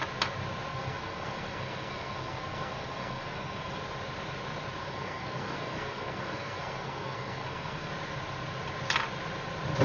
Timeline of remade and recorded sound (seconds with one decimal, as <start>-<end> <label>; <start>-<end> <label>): 0.0-0.7 recorded; 0.7-3.8 remade; 3.8-4.8 recorded; 4.8-7.9 remade; 7.9-9.8 recorded